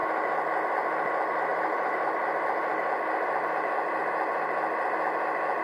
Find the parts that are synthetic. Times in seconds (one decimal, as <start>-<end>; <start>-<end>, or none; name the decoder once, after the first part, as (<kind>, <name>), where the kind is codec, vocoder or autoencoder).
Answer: 1.5-2.1 (vocoder, BigVGAN v2)

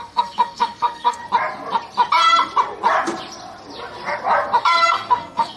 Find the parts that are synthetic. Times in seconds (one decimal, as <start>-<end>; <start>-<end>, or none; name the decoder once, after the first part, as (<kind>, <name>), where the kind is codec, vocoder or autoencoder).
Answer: 0.0-1.2 (codec, SNAC); 4.6-5.6

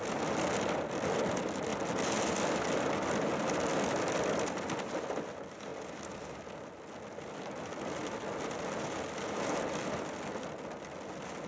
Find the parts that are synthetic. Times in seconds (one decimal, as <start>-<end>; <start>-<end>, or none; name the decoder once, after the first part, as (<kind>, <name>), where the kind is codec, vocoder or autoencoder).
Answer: 1.7-4.9 (vocoder, BigVGAN v2)